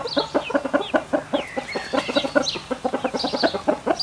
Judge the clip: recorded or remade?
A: recorded